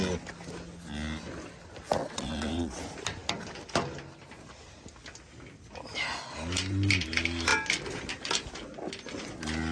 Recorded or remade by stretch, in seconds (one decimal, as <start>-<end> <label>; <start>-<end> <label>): 0.0-2.0 recorded; 2.0-2.8 remade; 2.8-9.7 recorded